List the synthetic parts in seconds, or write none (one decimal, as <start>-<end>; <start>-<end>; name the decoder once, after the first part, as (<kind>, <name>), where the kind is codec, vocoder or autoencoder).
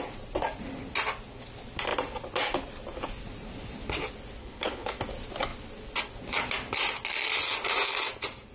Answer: 4.4-4.9 (codec, HILCodec)